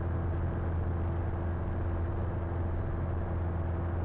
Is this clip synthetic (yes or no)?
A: no